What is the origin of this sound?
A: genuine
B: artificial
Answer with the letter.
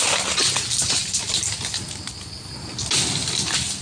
A